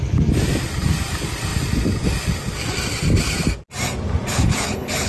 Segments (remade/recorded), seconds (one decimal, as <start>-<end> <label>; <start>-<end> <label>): 0.0-4.3 recorded; 4.3-5.1 remade